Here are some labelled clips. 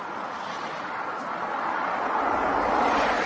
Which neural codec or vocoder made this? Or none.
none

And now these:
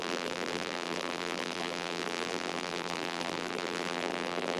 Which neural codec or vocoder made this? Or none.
vocoder, BigVGAN v2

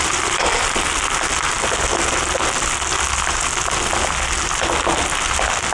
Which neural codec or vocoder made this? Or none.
none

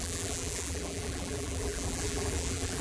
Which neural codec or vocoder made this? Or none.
vocoder, BigVGAN v2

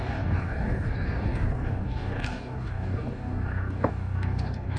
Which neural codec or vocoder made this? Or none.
codec, DAC